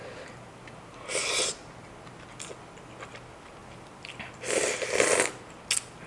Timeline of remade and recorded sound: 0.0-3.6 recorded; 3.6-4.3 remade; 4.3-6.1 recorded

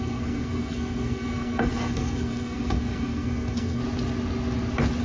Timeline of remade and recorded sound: 0.0-3.8 remade; 3.8-5.0 recorded

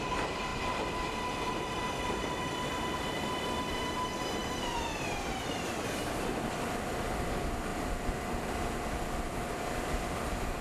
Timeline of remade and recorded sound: 0.0-0.5 recorded; 0.5-3.5 remade; 3.5-4.4 recorded; 4.4-6.5 remade; 6.5-10.6 recorded